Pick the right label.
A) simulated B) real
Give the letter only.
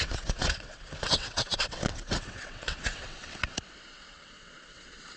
A